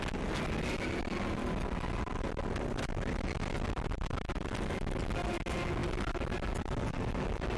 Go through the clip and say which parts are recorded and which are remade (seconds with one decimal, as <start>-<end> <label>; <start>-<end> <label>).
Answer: 0.0-5.8 recorded; 5.8-6.5 remade; 6.5-7.6 recorded